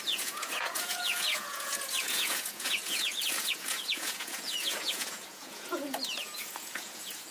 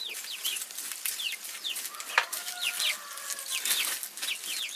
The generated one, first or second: first